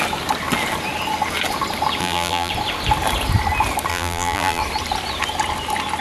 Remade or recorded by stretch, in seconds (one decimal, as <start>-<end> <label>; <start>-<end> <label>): 0.0-2.0 recorded; 2.0-2.5 remade; 2.5-3.9 recorded; 3.9-4.6 remade; 4.6-6.0 recorded